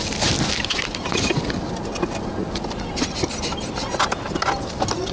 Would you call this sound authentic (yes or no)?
yes